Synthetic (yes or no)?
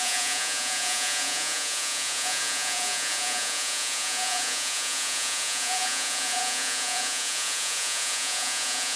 yes